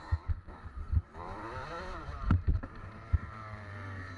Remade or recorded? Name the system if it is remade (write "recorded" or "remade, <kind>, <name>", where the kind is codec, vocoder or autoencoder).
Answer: remade, vocoder, BigVGAN v2